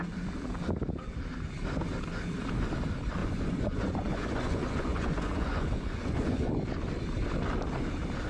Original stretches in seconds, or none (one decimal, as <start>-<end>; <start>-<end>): 0.0-3.2; 6.5-8.3